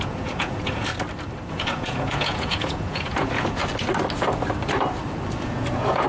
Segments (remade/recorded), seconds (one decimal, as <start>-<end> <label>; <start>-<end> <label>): 0.0-0.9 remade; 0.9-1.5 recorded; 1.5-3.6 remade; 3.6-5.4 recorded; 5.4-6.1 remade